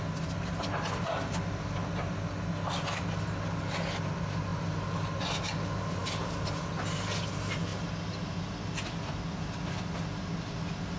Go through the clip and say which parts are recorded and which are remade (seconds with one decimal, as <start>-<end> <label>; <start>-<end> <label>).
0.0-11.0 recorded